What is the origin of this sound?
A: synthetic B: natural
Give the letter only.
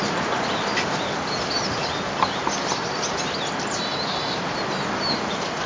B